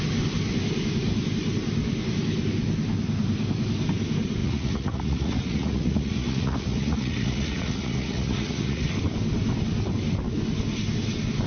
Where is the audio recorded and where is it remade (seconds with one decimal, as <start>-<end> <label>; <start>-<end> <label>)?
0.0-4.4 recorded; 4.4-8.9 remade; 8.9-11.5 recorded